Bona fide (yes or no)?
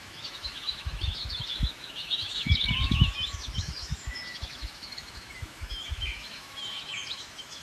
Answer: no